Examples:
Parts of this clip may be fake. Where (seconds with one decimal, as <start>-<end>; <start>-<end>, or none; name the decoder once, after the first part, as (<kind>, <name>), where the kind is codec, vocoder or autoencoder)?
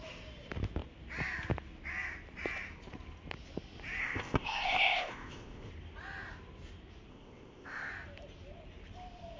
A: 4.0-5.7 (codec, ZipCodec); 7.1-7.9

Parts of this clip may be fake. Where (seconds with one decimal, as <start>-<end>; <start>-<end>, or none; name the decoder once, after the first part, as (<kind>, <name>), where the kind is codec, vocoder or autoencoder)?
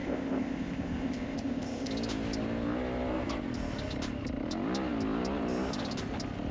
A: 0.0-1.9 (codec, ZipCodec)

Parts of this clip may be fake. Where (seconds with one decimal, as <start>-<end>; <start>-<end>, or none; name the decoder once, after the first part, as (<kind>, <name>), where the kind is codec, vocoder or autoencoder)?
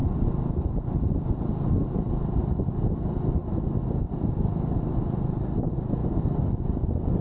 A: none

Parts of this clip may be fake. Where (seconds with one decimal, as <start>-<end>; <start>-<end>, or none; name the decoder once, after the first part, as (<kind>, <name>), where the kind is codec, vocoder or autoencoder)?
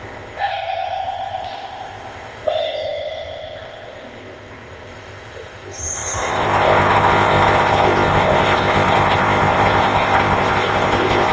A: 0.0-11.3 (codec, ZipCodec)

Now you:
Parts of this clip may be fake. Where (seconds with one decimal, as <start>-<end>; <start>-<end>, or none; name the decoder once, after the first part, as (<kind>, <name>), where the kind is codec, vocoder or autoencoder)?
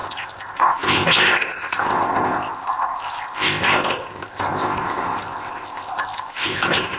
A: 0.0-7.0 (codec, ZipCodec)